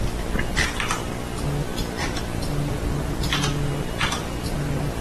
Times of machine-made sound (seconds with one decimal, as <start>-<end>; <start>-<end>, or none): none